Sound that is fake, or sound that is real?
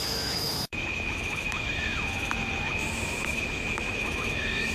fake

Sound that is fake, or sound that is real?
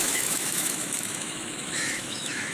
fake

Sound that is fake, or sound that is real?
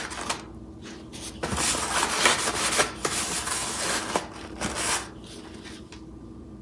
real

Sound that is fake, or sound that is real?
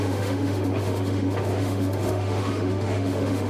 fake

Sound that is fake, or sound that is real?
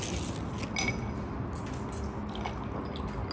real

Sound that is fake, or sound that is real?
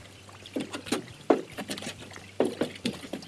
real